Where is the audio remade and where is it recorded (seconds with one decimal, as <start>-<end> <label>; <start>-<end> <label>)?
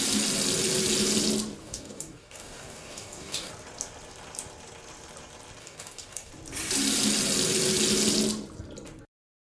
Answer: 0.0-1.6 recorded; 1.6-3.5 remade; 3.5-5.6 recorded; 5.6-6.3 remade; 6.3-9.5 recorded